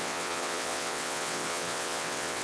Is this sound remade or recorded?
remade